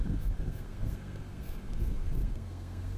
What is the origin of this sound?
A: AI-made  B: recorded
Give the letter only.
A